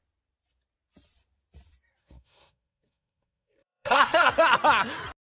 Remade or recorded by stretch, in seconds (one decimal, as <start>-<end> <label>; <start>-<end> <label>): 0.0-2.0 recorded; 2.0-4.3 remade; 4.3-5.3 recorded